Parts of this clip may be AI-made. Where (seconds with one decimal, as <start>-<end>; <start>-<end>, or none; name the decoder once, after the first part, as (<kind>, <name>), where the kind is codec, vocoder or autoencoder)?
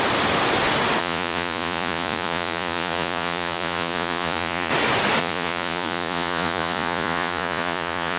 1.0-4.7 (vocoder, Vocos); 5.2-8.2